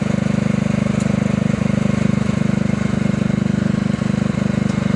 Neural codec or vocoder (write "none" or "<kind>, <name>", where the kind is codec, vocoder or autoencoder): none